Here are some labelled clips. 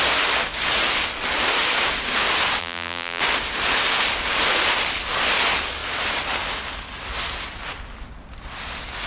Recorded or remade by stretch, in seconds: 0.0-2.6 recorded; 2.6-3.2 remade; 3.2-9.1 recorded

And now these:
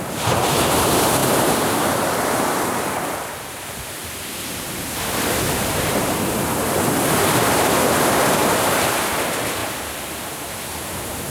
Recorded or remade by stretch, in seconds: 0.0-11.3 remade

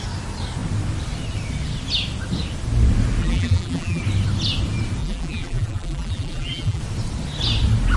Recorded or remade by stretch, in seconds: 0.0-3.2 recorded; 3.2-4.0 remade; 4.0-5.0 recorded; 5.0-6.8 remade; 6.8-8.0 recorded

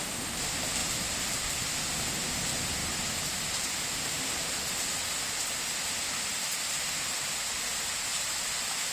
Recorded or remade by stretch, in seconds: 0.0-0.8 recorded; 0.8-2.0 remade; 2.0-2.8 recorded; 2.8-3.8 remade; 3.8-8.9 recorded

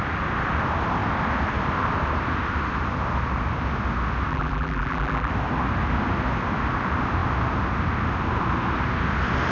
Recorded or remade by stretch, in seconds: 0.0-4.3 recorded; 4.3-5.3 remade; 5.3-9.5 recorded

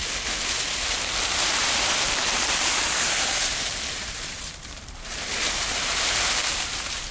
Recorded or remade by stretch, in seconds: 0.0-1.4 recorded; 1.4-7.1 remade

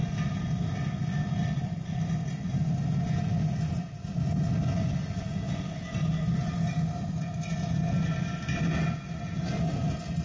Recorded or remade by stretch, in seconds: 0.0-10.2 recorded